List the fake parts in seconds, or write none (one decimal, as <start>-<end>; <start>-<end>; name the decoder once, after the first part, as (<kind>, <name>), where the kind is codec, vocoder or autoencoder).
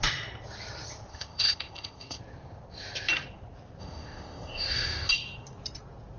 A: 1.1-2.2 (codec, ZipCodec); 3.8-5.1